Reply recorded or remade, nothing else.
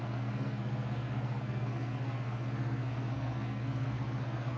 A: remade